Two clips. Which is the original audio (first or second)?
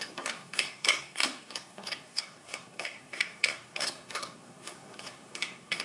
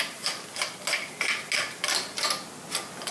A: second